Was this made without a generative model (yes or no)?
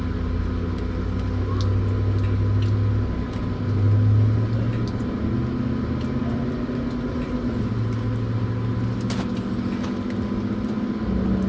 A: yes